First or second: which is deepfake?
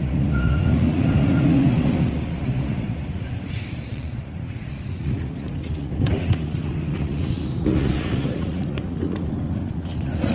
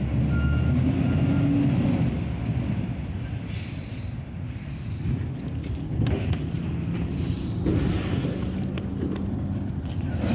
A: first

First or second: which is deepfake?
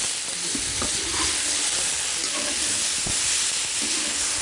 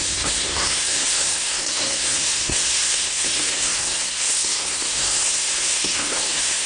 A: second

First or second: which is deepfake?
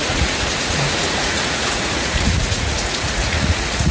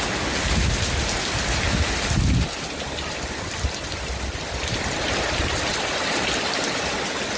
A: first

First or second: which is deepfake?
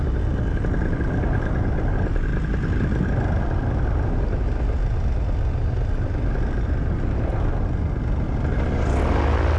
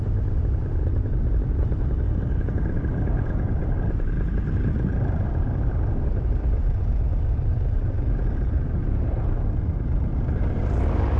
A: second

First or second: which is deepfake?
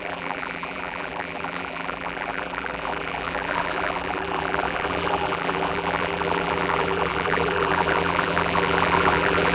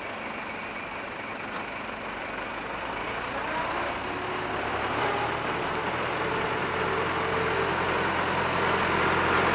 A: first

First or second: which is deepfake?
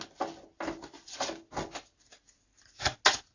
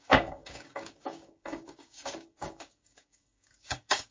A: second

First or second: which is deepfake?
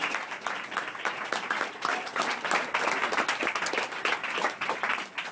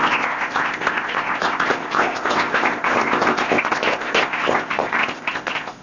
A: second